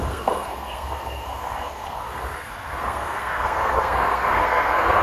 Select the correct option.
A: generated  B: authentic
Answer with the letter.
A